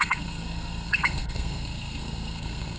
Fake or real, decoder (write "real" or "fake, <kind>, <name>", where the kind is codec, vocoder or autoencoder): fake, codec, SNAC